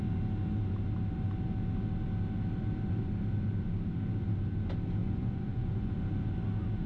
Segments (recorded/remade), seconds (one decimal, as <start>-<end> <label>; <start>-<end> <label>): 0.0-5.0 recorded; 5.0-5.9 remade; 5.9-6.9 recorded